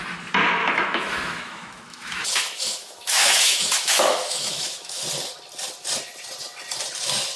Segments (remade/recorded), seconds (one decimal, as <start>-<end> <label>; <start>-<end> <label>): 0.0-0.6 recorded; 0.6-5.0 remade; 5.0-7.4 recorded